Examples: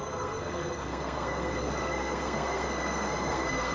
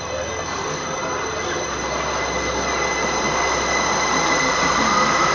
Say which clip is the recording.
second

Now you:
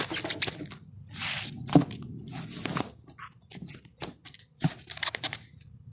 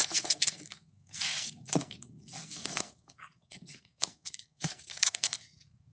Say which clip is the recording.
first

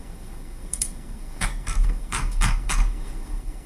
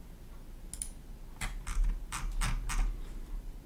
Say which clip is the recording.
second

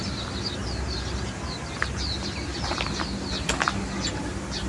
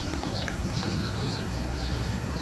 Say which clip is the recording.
first